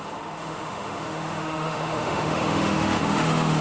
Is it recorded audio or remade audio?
remade